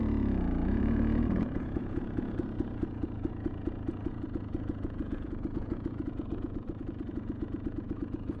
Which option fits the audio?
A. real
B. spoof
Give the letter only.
B